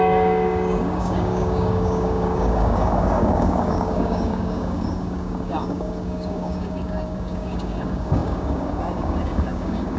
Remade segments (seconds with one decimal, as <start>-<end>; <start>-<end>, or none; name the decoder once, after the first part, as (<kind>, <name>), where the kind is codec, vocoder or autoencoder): 0.0-10.0 (codec, DAC)